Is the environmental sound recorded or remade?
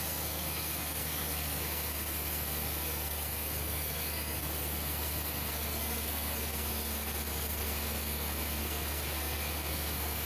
remade